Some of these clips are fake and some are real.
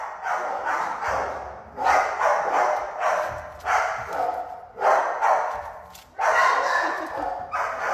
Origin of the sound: real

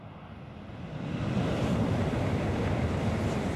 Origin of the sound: real